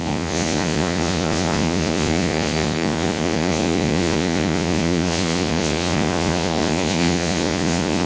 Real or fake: fake